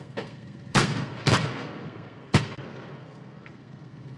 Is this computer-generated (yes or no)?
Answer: yes